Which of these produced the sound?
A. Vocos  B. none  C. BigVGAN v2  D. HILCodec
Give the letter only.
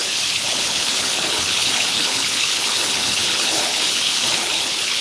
D